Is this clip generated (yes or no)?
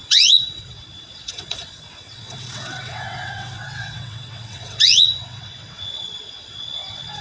yes